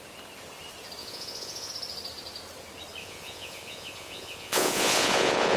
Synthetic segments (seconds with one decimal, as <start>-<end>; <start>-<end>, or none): 1.0-1.7; 3.0-5.6